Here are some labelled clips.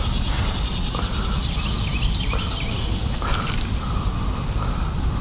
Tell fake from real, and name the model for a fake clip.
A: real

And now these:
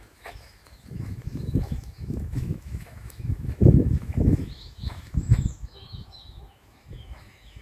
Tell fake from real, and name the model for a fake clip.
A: fake, autoencoder, DAC-VAE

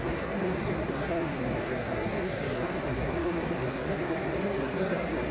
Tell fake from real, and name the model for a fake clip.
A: fake, codec, SNAC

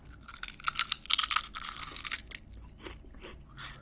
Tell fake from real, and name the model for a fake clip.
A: real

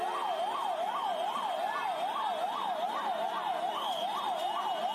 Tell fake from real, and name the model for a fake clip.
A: real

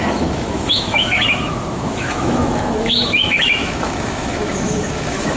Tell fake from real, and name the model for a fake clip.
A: fake, autoencoder, DAC-VAE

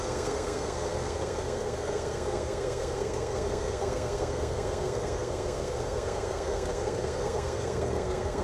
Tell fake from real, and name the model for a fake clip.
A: fake, codec, SNAC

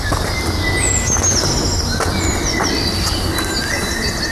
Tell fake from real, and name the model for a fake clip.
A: real